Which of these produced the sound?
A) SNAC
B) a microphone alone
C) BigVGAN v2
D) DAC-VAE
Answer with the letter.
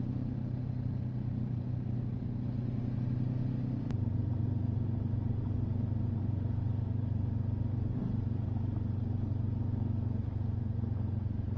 B